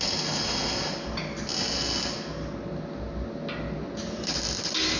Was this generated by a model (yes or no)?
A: no